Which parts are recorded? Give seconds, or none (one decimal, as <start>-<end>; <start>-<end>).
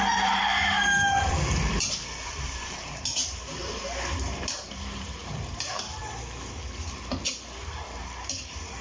6.0-7.7